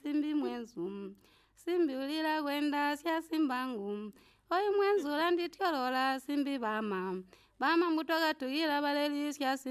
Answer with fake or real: real